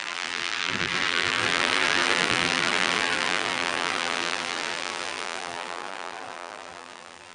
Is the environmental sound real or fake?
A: fake